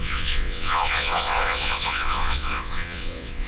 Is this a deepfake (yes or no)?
yes